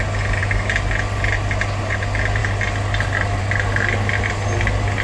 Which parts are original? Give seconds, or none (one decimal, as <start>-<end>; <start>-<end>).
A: 0.0-5.0